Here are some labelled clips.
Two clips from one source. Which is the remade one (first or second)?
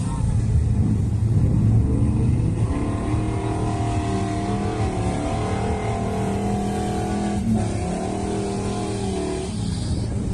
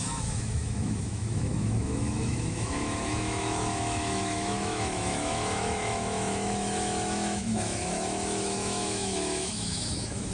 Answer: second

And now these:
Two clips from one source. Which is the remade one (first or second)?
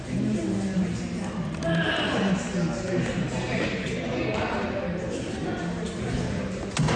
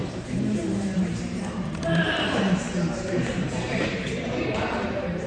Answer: second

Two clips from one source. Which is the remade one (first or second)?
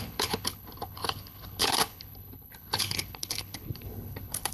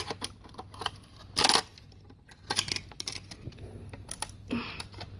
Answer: first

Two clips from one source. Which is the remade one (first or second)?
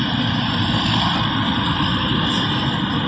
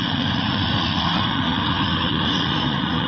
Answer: second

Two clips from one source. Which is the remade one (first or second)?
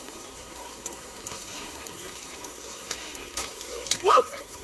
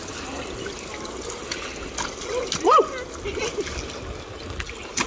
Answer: first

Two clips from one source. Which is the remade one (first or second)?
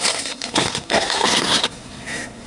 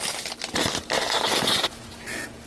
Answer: first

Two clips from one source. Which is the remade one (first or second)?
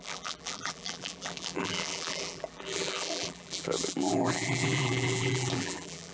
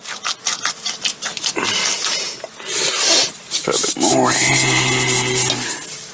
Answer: first